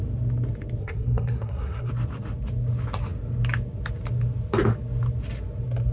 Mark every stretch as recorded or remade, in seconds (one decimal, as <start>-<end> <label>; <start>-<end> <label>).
0.0-0.8 recorded; 0.8-1.9 remade; 1.9-5.9 recorded